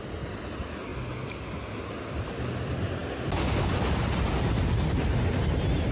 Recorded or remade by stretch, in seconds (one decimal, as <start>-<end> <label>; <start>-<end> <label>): 0.0-5.9 recorded